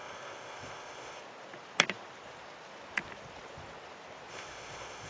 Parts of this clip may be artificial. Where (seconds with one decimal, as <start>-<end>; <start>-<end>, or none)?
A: 0.0-1.2; 4.3-5.1